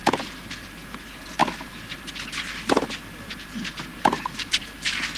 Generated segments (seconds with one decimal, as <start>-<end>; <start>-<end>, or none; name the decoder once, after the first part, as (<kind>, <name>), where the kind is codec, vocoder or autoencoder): 0.6-1.4 (vocoder, BigVGAN v2); 2.0-3.7; 4.5-5.2